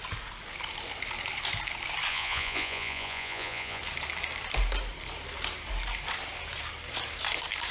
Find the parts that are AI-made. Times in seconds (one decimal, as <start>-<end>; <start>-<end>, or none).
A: 2.1-3.8

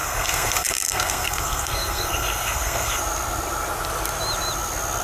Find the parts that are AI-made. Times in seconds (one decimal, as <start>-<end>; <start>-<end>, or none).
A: 0.0-3.0

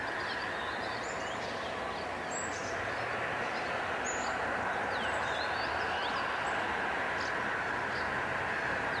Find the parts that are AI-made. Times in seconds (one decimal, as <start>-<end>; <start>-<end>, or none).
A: none

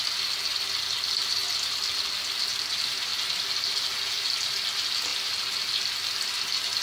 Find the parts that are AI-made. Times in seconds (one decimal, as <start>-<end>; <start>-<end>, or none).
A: none